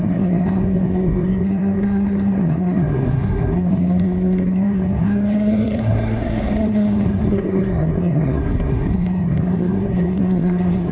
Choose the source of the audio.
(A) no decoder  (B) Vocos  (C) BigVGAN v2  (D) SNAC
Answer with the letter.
D